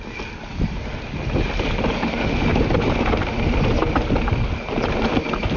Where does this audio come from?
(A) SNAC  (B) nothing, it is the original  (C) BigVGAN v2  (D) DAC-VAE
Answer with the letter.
B